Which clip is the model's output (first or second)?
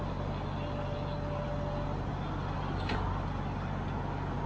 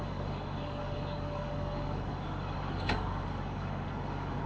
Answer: second